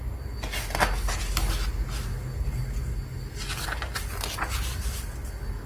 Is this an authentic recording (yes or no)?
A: yes